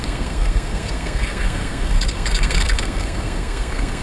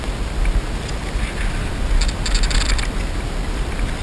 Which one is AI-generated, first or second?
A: first